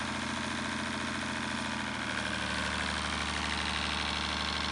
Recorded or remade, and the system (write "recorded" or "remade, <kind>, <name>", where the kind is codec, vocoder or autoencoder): recorded